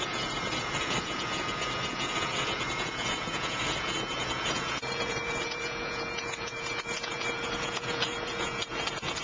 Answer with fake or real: fake